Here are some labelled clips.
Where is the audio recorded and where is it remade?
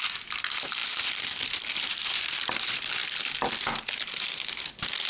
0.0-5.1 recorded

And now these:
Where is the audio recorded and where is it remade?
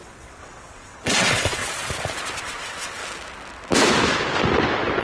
0.0-1.6 remade; 1.6-2.4 recorded; 2.4-3.0 remade; 3.0-5.0 recorded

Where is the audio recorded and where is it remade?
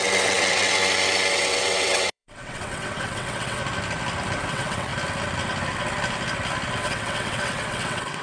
0.0-0.8 remade; 0.8-1.3 recorded; 1.3-3.6 remade; 3.6-4.5 recorded; 4.5-4.9 remade; 4.9-6.8 recorded; 6.8-8.2 remade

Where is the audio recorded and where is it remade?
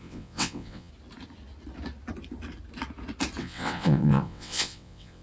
0.0-0.9 remade; 0.9-3.4 recorded; 3.4-5.2 remade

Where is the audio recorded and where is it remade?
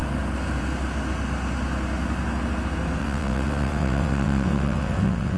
0.0-3.0 recorded; 3.0-5.4 remade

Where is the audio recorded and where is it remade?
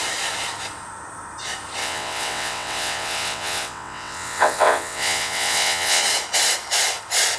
0.0-1.8 recorded; 1.8-6.0 remade; 6.0-7.4 recorded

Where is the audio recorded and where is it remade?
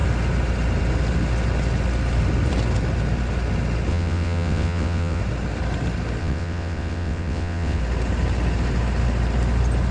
0.0-3.9 recorded; 3.9-5.2 remade; 5.2-6.2 recorded; 6.2-7.8 remade; 7.8-9.9 recorded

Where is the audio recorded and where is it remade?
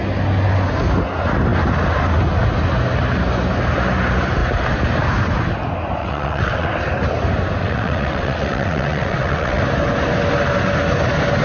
0.0-6.0 recorded; 6.0-6.7 remade; 6.7-7.6 recorded; 7.6-9.6 remade; 9.6-11.4 recorded